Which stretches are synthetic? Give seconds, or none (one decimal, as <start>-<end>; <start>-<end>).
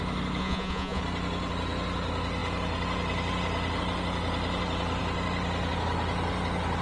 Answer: 0.4-1.0